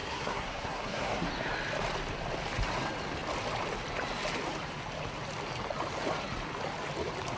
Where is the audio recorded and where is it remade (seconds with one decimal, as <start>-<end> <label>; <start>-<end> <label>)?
0.0-1.3 remade; 1.3-7.4 recorded